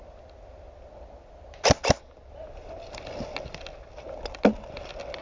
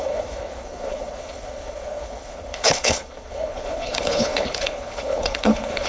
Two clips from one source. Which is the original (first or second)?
first